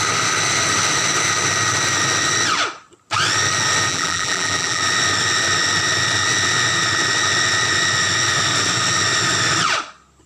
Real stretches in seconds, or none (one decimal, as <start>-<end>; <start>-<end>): 0.0-3.9; 4.8-10.3